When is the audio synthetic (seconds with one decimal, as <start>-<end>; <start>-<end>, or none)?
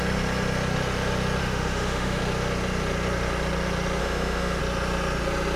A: 1.4-2.2; 4.0-4.6